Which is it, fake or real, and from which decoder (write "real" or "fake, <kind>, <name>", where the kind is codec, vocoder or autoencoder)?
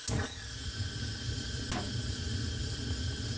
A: real